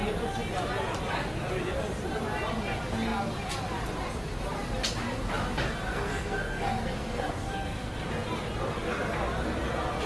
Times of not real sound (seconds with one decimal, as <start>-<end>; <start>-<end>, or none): 5.9-8.1